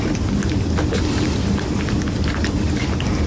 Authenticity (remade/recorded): recorded